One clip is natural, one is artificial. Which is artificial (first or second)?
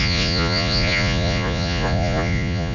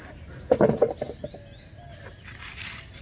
first